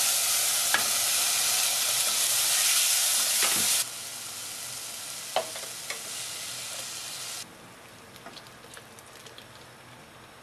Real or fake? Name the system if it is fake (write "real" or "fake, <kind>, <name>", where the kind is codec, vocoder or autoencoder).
real